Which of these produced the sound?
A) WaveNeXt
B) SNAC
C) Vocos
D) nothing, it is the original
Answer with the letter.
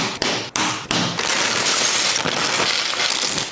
D